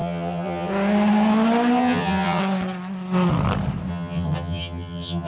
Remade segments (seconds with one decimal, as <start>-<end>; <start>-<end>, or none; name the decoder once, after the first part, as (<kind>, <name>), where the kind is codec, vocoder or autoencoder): 0.0-0.7 (vocoder, HiFi-GAN); 1.8-2.4; 3.9-5.3